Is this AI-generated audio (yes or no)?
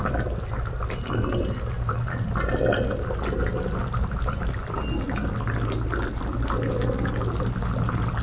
no